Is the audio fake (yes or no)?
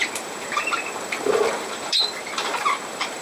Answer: yes